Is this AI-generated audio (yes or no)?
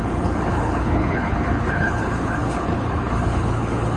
yes